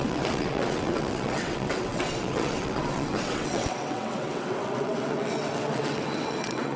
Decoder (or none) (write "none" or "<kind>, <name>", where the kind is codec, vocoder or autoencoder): vocoder, WaveNeXt